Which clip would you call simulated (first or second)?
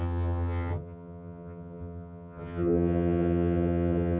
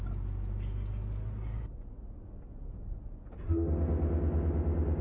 first